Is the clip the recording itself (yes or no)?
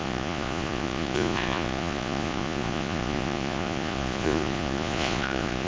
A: no